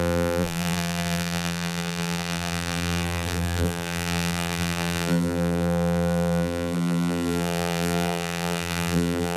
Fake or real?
fake